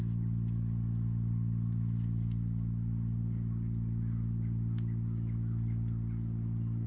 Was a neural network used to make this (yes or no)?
no